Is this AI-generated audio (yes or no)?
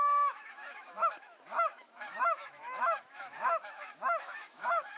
yes